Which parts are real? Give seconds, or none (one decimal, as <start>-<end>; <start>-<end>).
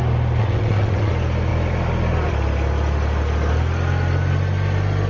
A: 0.0-0.4; 1.1-5.1